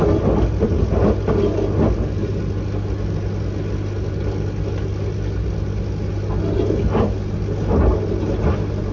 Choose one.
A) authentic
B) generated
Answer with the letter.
A